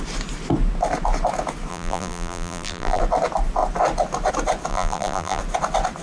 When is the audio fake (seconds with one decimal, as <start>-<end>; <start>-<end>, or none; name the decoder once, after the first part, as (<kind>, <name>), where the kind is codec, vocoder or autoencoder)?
1.7-3.0 (vocoder, BigVGAN v2); 4.7-5.4